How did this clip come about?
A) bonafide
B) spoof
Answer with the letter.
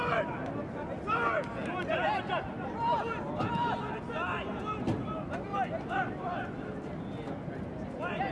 A